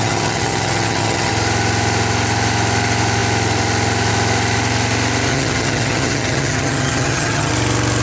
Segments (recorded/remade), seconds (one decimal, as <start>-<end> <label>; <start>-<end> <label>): 0.0-1.3 remade; 1.3-5.3 recorded; 5.3-7.5 remade; 7.5-8.0 recorded